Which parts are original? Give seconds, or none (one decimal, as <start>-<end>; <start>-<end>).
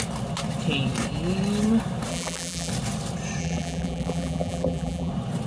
0.0-2.1; 2.7-3.4; 5.1-5.5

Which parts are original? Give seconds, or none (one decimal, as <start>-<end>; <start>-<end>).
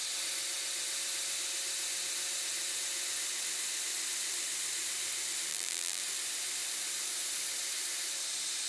0.0-5.5; 6.0-8.7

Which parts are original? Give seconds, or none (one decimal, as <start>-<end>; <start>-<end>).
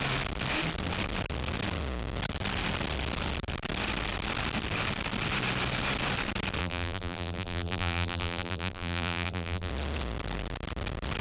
0.0-6.6; 9.7-11.2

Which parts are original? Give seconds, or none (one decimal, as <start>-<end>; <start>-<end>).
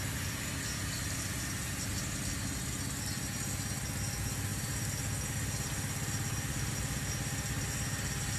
0.0-8.4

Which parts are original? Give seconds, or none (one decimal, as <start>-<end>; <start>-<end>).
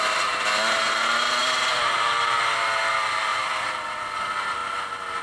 0.0-1.4; 2.9-3.3; 4.0-5.2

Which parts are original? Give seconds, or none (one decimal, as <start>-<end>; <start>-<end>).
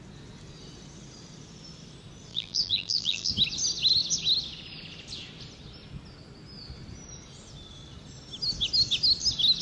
0.0-2.3; 3.3-9.6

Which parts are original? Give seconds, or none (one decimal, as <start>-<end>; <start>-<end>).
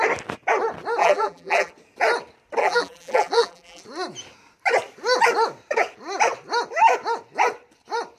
0.0-1.0; 1.7-2.6; 3.8-8.2